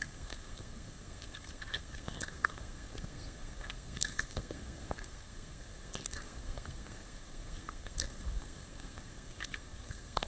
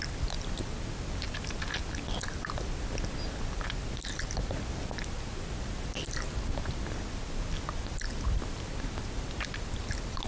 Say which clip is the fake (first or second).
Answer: first